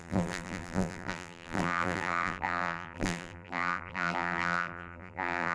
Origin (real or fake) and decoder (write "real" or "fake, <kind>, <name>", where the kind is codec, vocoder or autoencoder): fake, vocoder, BigVGAN v2